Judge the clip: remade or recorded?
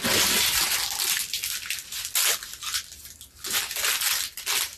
recorded